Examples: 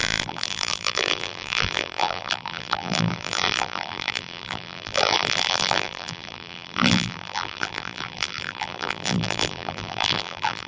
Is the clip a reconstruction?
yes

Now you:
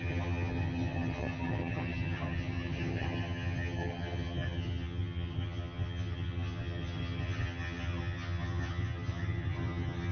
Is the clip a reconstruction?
yes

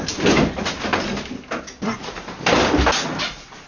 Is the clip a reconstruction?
no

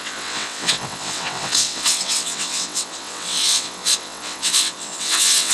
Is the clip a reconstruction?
yes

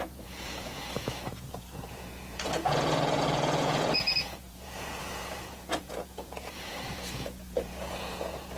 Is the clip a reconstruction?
yes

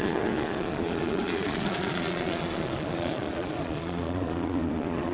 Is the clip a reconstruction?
yes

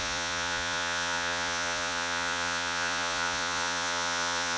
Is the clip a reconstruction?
yes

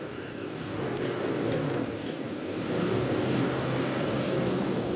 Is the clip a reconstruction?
yes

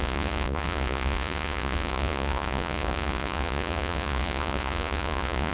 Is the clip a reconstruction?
yes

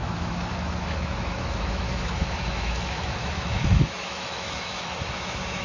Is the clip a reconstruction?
yes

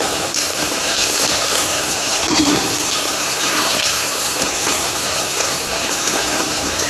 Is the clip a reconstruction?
yes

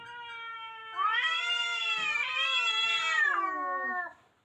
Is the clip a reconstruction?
no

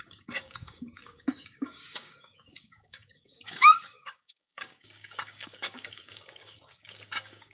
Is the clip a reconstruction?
yes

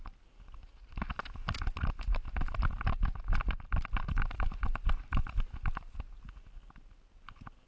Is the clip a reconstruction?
no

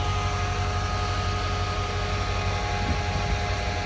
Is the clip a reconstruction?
no